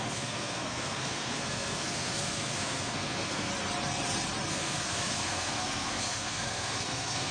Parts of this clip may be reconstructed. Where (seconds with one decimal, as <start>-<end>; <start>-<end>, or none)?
0.0-3.5; 4.5-7.3